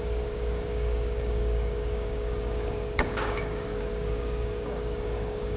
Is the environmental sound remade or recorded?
remade